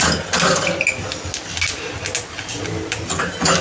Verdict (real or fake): real